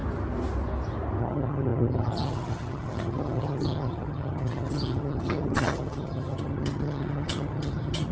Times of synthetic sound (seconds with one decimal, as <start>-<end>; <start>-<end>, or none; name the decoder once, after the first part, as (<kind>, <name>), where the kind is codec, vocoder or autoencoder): 1.2-8.1 (vocoder, HiFi-GAN)